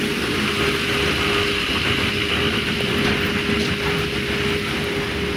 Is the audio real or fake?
real